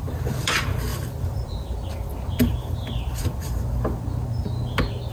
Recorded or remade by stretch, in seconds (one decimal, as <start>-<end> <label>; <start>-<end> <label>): 0.0-0.9 recorded; 0.9-1.9 remade; 1.9-2.5 recorded; 2.5-3.2 remade; 3.2-5.1 recorded